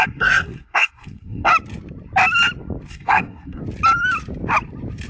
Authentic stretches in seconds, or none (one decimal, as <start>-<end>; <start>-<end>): 1.5-2.9; 3.6-5.1